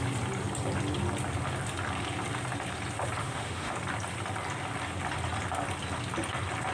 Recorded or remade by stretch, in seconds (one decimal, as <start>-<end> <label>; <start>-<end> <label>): 0.0-3.2 recorded; 3.2-3.7 remade; 3.7-6.7 recorded